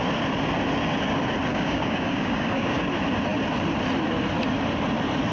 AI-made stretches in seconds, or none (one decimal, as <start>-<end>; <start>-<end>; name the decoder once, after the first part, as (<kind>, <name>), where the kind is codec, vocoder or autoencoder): 1.5-2.9 (codec, DAC)